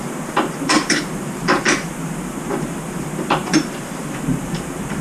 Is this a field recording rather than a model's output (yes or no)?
no